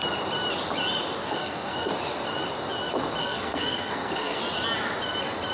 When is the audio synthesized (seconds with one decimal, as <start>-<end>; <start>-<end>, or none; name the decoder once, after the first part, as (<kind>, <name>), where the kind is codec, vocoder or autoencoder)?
1.2-1.9 (codec, SNAC); 3.2-4.4